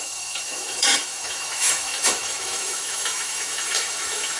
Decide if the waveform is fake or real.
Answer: fake